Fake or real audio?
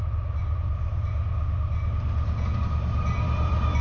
real